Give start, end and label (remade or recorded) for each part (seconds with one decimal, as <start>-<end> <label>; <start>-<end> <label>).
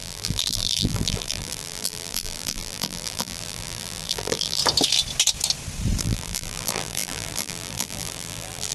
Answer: 0.0-4.6 remade; 4.6-6.0 recorded; 6.0-8.7 remade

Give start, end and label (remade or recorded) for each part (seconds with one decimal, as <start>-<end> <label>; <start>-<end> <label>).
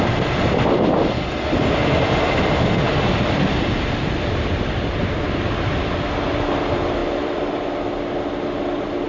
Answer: 0.0-1.8 recorded; 1.8-5.9 remade; 5.9-7.0 recorded; 7.0-7.6 remade; 7.6-9.1 recorded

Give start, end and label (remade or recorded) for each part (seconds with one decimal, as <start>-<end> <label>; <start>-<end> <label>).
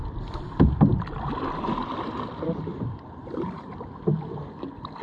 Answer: 0.0-3.2 recorded; 3.2-3.7 remade; 3.7-5.0 recorded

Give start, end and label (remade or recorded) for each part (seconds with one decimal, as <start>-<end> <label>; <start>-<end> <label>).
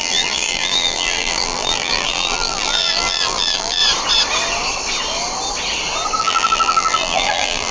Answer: 0.0-3.8 remade; 3.8-6.2 recorded; 6.2-7.7 remade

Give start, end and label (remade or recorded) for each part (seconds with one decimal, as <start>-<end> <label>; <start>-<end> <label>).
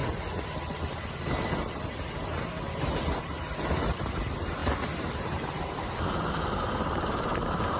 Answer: 0.0-2.8 recorded; 2.8-7.8 remade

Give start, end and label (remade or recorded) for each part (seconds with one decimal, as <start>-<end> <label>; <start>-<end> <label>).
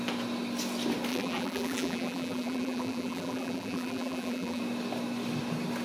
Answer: 0.0-1.1 recorded; 1.1-4.6 remade; 4.6-5.8 recorded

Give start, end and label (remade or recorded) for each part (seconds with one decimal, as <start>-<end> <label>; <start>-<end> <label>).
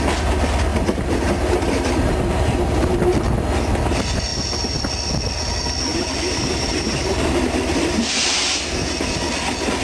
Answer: 0.0-0.7 recorded; 0.7-3.2 remade; 3.2-5.9 recorded; 5.9-8.0 remade; 8.0-9.8 recorded